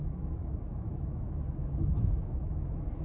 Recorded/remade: remade